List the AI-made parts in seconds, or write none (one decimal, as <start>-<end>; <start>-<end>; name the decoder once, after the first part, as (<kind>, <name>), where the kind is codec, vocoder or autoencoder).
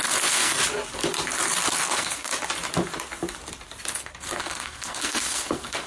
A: 0.0-0.6 (codec, SNAC); 1.7-2.3; 3.9-5.9